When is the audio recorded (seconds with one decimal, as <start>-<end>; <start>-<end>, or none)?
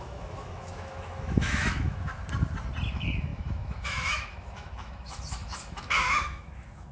2.1-2.9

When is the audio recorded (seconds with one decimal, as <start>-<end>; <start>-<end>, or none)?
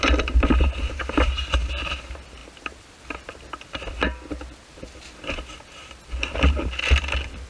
0.0-7.5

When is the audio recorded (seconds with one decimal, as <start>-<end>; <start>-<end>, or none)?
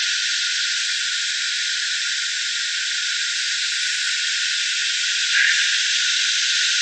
0.0-6.8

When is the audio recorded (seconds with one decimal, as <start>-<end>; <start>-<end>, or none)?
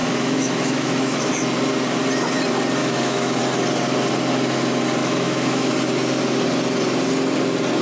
1.3-2.8; 3.4-5.0; 5.7-7.8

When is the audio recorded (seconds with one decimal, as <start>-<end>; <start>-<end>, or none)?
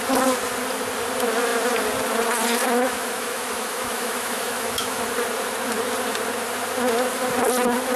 0.0-2.6; 5.0-8.0